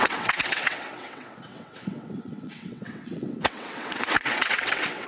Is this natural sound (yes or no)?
no